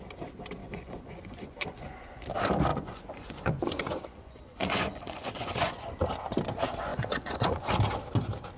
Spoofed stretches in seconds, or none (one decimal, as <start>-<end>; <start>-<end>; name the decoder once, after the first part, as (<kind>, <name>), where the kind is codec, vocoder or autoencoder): 0.6-2.2 (vocoder, Vocos); 2.7-5.8; 6.9-7.7